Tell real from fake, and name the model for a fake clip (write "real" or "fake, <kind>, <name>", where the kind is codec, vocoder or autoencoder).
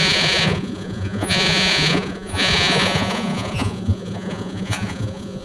fake, vocoder, Vocos